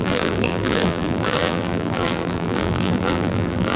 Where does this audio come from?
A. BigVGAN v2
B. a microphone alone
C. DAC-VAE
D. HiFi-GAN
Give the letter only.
A